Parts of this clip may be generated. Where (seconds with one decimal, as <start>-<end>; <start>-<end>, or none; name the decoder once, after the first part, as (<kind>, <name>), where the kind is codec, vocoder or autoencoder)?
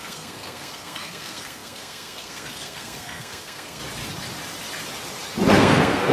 0.0-3.8 (codec, SNAC); 5.5-6.1